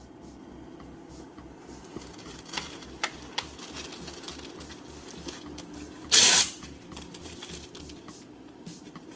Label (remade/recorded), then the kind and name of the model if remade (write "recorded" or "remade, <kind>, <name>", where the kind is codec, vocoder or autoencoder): recorded